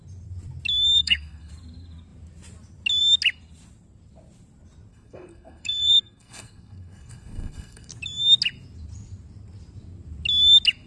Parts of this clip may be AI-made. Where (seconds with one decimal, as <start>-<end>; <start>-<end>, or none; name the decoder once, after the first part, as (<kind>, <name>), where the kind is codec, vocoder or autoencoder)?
1.0-1.5 (codec, SNAC); 4.9-7.9